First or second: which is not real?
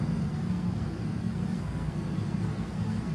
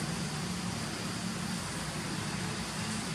first